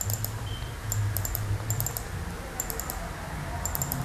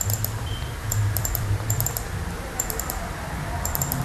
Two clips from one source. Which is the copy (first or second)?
second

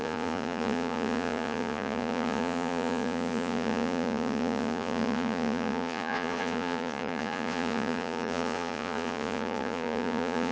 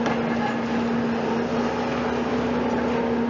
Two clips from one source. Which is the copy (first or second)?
first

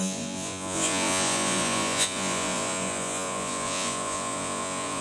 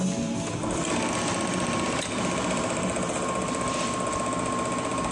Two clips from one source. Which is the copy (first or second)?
first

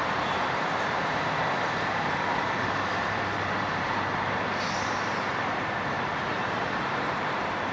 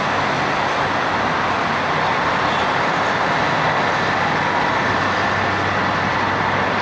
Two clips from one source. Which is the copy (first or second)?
first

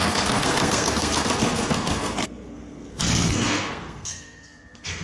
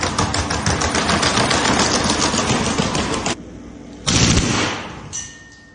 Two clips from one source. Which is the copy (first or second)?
first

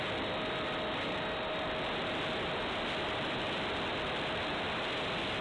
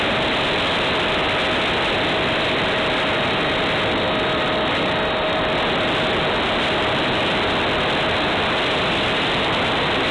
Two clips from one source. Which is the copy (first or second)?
first